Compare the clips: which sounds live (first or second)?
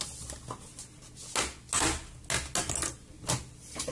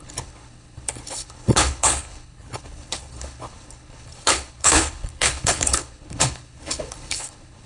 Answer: first